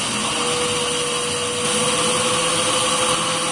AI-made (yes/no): no